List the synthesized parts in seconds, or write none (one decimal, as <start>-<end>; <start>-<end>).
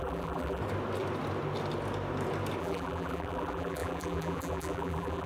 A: 0.0-0.6; 2.6-5.3